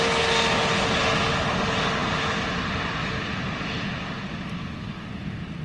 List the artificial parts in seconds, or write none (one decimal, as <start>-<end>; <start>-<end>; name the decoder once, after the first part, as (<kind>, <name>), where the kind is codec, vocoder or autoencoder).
none